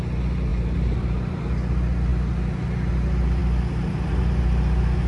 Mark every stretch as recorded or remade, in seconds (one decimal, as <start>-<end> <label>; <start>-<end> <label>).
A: 0.0-0.5 recorded; 0.5-1.4 remade; 1.4-5.1 recorded